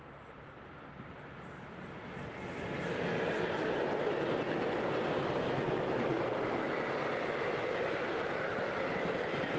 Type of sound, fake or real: real